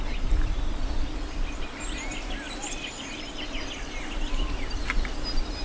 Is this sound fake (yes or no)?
no